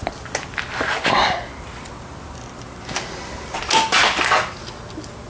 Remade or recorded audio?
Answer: recorded